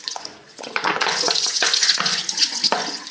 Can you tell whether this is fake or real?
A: fake